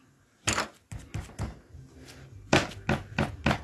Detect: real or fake real